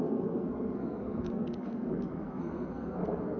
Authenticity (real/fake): fake